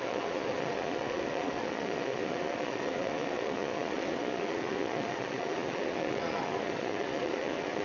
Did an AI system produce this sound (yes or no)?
yes